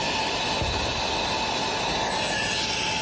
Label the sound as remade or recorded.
recorded